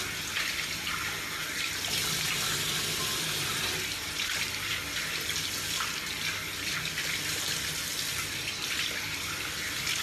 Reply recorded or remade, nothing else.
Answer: recorded